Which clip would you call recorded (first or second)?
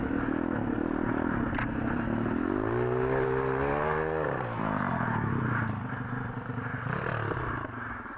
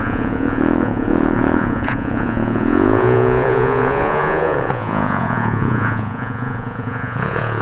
first